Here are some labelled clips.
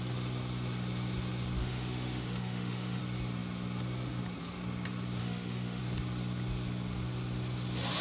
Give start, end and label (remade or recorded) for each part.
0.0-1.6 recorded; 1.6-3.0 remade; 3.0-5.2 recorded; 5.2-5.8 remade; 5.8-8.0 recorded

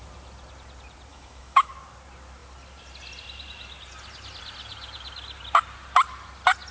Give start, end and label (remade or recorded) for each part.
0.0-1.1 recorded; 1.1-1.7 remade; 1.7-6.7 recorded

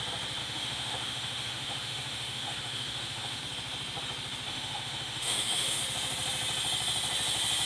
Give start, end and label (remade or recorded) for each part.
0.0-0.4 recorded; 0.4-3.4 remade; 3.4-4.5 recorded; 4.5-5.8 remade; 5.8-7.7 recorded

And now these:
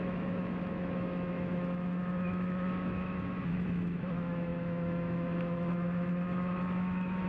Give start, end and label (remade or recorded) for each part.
0.0-7.3 remade

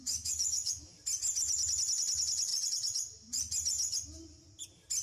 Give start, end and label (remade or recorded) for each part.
0.0-0.9 remade; 0.9-5.0 recorded